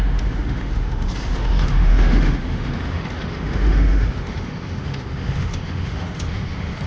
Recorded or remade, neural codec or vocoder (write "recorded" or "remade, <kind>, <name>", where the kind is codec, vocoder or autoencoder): remade, autoencoder, DAC-VAE